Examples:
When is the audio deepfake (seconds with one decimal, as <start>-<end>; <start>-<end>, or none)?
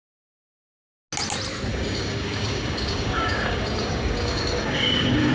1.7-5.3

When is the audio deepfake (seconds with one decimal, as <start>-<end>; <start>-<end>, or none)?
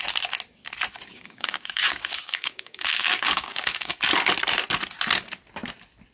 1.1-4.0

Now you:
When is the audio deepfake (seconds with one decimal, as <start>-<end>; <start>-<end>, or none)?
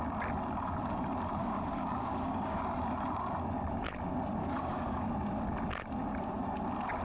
1.4-2.6; 4.4-5.1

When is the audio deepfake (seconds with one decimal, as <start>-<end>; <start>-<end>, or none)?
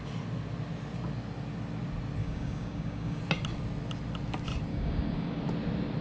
2.2-3.2; 4.7-5.4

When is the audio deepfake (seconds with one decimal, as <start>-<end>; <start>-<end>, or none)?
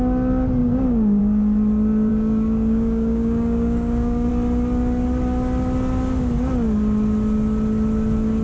0.6-1.2; 2.1-4.3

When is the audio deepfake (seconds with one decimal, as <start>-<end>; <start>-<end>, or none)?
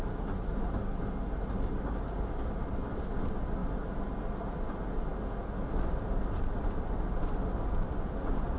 none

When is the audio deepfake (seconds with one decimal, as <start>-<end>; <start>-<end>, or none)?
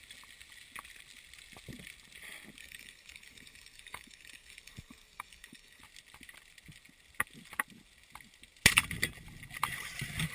2.6-5.8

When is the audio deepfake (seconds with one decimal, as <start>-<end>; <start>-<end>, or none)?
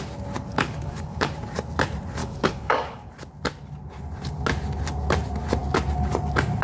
0.5-1.3; 2.2-3.1